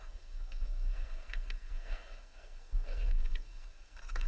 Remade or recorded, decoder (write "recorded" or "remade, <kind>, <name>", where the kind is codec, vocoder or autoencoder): remade, codec, SNAC